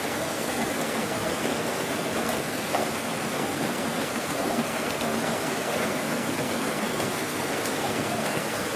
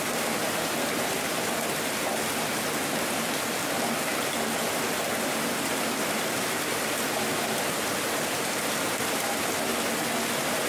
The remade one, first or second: first